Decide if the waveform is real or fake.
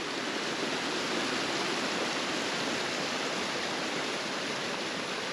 real